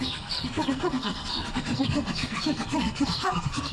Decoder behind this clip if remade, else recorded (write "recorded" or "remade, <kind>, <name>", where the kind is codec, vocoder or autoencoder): remade, codec, SNAC